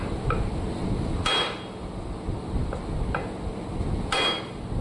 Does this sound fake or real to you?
real